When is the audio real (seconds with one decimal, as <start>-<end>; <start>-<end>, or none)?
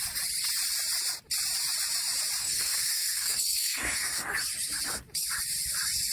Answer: 0.0-2.4; 4.3-6.1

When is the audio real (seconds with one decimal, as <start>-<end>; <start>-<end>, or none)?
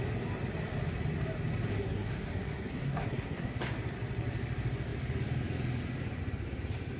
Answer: 0.0-1.7; 3.5-7.0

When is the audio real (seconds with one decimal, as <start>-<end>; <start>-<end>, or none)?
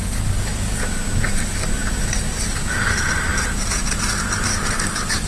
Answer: 0.8-4.5